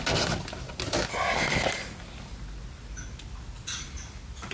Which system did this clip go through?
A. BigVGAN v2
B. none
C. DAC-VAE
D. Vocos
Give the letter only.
B